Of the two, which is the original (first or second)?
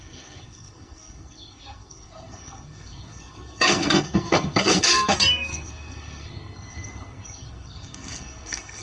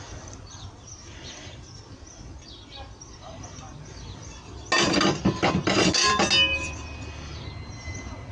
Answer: second